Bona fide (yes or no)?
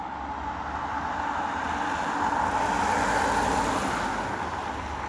yes